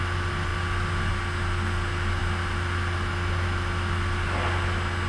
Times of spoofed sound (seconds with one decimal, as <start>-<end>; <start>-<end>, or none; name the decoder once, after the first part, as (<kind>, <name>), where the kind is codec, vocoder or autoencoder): none